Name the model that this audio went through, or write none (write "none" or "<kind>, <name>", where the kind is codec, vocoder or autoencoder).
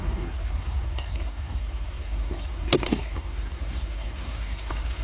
codec, SNAC